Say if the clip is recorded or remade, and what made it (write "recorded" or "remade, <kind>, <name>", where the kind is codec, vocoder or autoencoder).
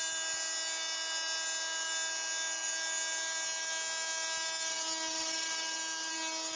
recorded